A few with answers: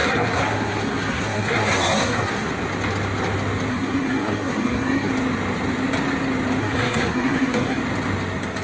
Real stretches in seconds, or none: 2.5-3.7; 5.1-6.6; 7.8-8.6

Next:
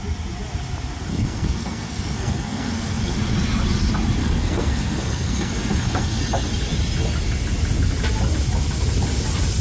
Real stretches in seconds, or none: 0.0-1.1; 3.2-4.2; 6.2-9.6

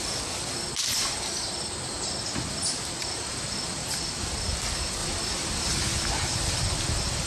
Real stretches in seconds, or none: 0.0-3.8; 4.3-7.3